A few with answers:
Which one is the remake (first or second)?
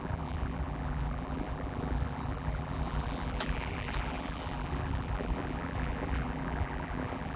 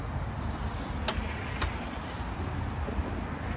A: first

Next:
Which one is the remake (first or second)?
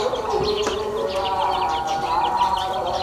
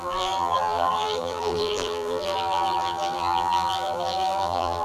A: second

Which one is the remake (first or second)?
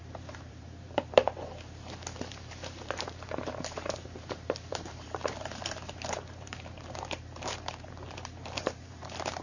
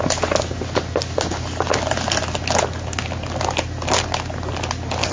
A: first